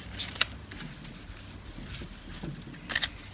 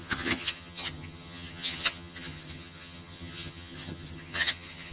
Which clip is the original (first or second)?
first